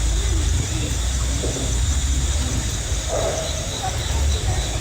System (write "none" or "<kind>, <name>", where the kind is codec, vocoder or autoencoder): vocoder, BigVGAN v2